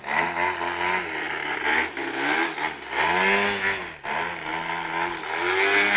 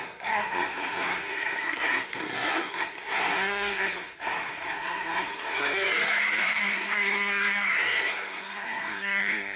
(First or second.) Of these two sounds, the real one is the first